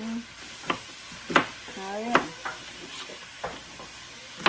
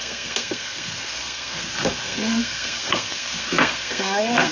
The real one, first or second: first